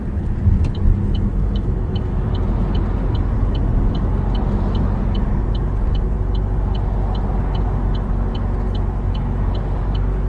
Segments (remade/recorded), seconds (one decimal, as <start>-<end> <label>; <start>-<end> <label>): 0.0-1.3 recorded; 1.3-2.3 remade; 2.3-10.3 recorded